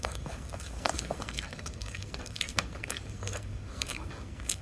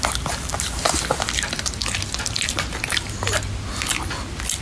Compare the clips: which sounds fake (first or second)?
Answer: first